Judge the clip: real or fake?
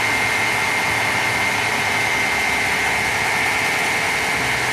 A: real